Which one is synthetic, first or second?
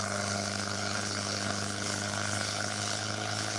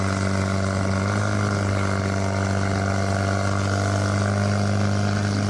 first